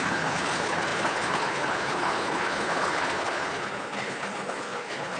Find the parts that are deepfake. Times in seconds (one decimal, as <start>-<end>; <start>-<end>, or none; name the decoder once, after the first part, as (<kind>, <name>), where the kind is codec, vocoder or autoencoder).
0.0-5.2 (codec, HILCodec)